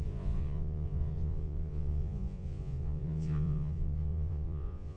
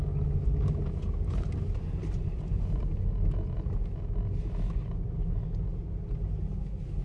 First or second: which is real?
second